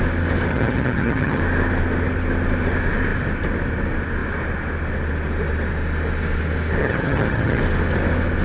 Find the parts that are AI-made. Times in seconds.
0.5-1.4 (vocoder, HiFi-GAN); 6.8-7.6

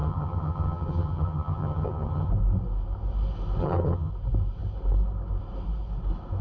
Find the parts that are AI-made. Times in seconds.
0.0-2.3 (vocoder, HiFi-GAN); 3.6-4.1

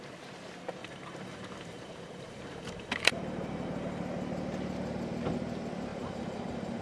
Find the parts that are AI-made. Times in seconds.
0.8-4.0 (vocoder, BigVGAN v2); 5.9-6.8

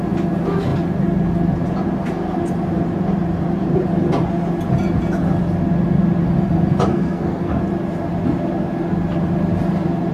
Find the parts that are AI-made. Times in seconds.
6.9-7.6 (codec, SNAC)